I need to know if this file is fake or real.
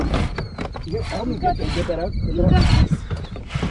real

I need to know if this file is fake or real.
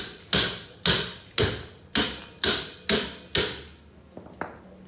real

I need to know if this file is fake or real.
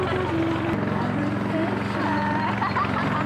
real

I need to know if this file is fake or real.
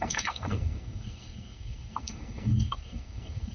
fake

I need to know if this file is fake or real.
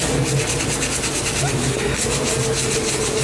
real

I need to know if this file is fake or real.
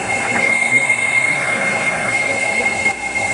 fake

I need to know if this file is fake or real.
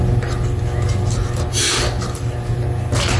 real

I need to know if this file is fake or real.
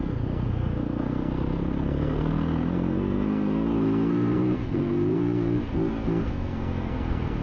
fake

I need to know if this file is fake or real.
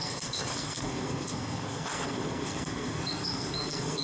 fake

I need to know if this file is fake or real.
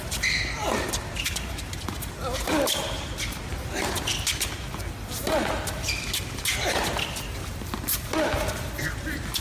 real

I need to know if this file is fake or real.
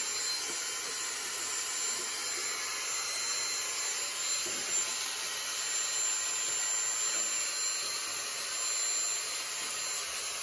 real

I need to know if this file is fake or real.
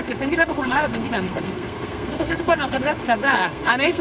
fake